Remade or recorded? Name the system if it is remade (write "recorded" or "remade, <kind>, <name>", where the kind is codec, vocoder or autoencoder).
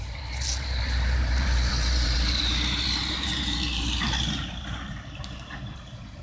remade, vocoder, BigVGAN v2